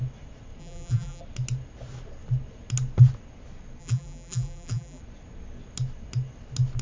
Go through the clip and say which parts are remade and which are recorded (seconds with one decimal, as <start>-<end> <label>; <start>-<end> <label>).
0.0-0.6 recorded; 0.6-1.2 remade; 1.2-3.8 recorded; 3.8-5.0 remade; 5.0-6.8 recorded